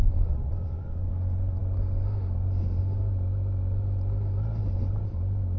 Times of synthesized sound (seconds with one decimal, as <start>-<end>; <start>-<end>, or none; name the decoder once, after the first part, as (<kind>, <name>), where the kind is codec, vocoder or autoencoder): 0.0-1.1 (vocoder, Vocos)